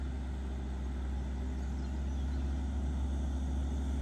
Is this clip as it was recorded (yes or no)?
yes